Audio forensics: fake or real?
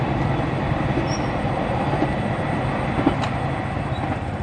real